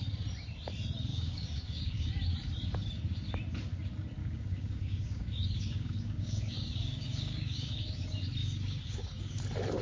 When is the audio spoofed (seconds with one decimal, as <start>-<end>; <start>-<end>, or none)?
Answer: 1.1-2.1; 4.2-8.0; 8.4-9.4